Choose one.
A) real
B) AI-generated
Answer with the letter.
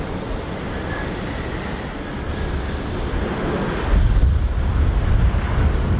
A